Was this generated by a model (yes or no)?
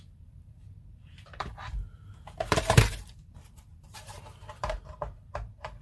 yes